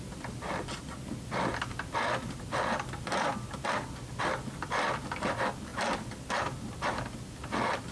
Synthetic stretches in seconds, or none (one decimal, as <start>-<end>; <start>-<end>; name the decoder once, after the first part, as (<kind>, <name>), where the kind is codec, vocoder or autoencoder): none